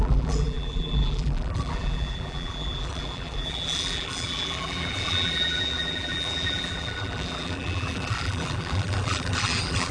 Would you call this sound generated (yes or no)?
yes